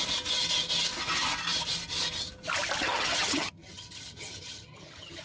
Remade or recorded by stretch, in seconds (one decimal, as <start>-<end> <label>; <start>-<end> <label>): 0.0-2.8 recorded; 2.8-5.2 remade

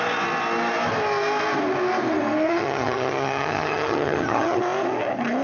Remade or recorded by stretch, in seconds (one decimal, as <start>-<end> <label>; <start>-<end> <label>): 0.0-2.4 recorded; 2.4-4.6 remade; 4.6-5.4 recorded